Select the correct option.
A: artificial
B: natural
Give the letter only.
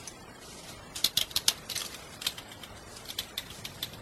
B